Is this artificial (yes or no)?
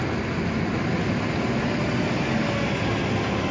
no